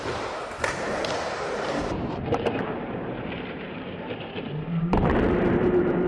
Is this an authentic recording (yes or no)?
no